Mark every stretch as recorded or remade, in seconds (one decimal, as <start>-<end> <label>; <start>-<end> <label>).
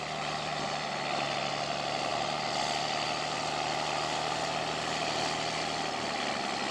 0.0-6.7 recorded